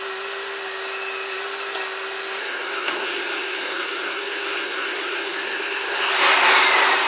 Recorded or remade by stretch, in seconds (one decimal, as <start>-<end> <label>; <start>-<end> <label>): 0.0-2.4 recorded; 2.4-6.1 remade; 6.1-7.1 recorded